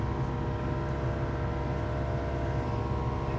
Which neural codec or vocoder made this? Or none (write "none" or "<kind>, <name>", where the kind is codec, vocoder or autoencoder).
none